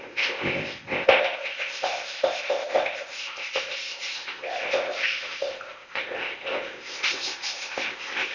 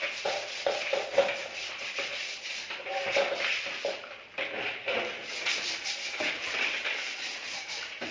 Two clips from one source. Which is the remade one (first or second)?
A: first